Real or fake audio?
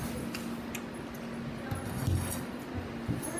real